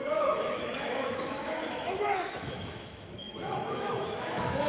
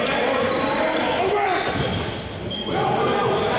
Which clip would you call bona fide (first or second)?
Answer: second